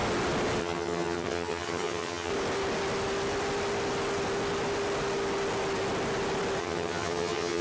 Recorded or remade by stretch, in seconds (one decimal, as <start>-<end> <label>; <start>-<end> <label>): 0.0-0.6 recorded; 0.6-2.3 remade; 2.3-6.6 recorded; 6.6-7.6 remade